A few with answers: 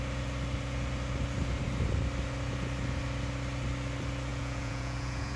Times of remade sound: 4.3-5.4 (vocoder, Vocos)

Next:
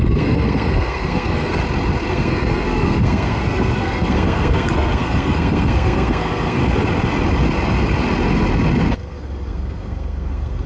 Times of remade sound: 0.0-1.6 (codec, SNAC); 2.1-6.6; 8.9-10.7

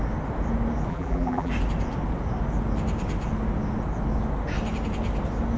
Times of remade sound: 0.9-1.5 (vocoder, BigVGAN v2)

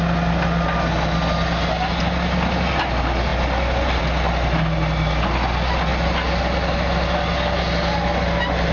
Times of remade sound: none

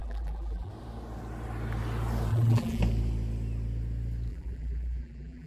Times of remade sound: 0.0-0.7 (vocoder, BigVGAN v2); 2.3-2.8; 4.3-5.5

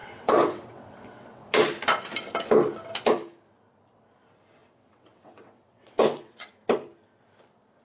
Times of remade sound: 0.0-1.4 (vocoder, WaveNeXt); 4.6-6.5